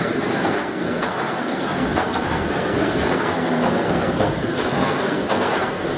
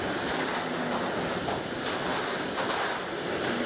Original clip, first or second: second